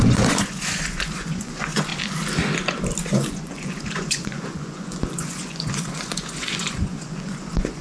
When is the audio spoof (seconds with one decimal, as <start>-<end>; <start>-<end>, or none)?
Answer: 0.0-1.9; 3.0-7.8